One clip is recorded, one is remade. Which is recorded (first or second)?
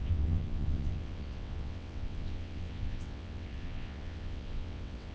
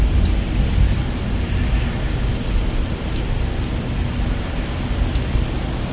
second